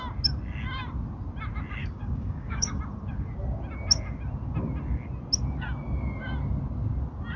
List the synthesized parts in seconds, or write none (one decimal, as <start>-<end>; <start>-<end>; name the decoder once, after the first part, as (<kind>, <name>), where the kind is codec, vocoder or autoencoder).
1.8-2.8 (codec, DAC)